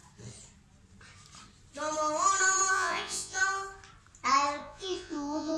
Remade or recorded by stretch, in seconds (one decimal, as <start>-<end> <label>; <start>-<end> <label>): 0.0-2.7 recorded; 2.7-3.4 remade; 3.4-4.6 recorded; 4.6-5.6 remade